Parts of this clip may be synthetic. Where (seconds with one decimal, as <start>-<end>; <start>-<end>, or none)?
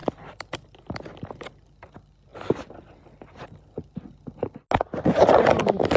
none